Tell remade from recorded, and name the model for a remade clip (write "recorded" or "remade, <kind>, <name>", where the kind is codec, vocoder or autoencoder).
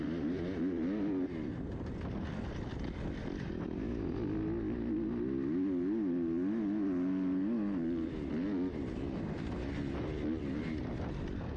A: recorded